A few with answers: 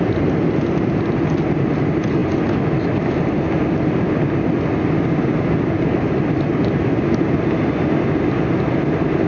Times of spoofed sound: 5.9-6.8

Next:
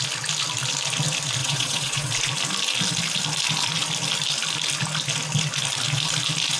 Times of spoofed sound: 1.4-2.1

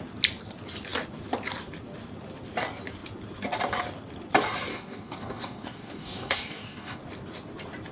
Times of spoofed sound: 4.7-7.0

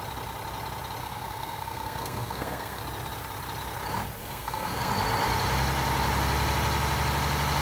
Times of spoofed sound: 1.0-2.8; 4.2-4.9

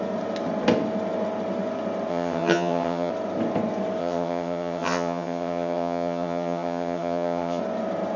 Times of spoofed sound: 2.1-3.1; 4.0-7.6

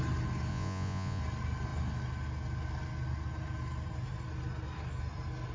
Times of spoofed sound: 0.5-1.2

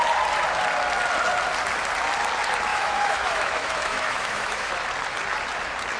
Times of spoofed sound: 2.7-4.7